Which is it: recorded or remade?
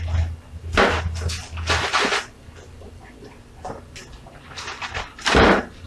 recorded